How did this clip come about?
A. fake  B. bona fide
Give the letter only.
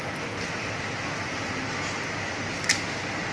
B